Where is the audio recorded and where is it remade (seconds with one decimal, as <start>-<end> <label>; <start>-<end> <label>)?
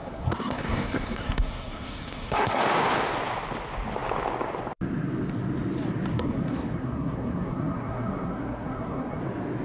0.0-2.6 remade; 2.6-6.1 recorded; 6.1-9.2 remade; 9.2-9.6 recorded